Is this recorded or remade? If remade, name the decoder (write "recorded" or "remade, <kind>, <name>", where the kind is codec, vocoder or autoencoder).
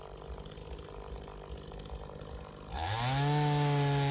recorded